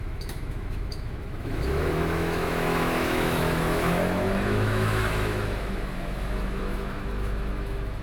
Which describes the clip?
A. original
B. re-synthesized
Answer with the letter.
B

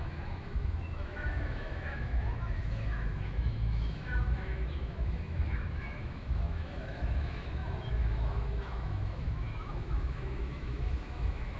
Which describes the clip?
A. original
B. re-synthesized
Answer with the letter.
B